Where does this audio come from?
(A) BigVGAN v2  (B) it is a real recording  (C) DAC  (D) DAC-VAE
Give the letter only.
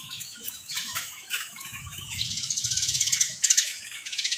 D